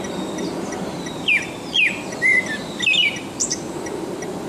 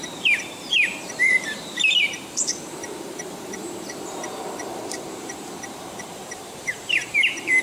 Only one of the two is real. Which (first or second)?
first